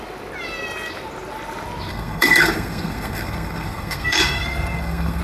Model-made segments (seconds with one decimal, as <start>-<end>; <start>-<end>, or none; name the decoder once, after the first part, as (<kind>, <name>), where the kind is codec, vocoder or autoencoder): 1.9-5.2 (codec, SNAC)